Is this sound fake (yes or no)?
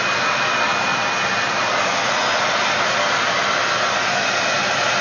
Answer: no